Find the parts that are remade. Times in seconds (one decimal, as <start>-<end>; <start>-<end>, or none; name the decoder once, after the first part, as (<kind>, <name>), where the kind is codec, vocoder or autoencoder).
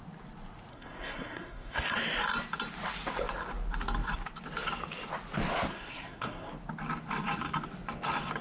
0.7-2.0 (codec, SNAC); 5.7-6.5